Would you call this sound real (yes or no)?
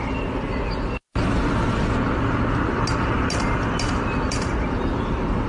yes